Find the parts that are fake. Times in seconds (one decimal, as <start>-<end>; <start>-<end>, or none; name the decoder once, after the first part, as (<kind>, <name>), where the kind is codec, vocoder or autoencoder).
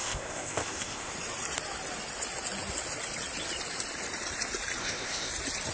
0.0-1.1 (codec, ZipCodec); 4.8-5.3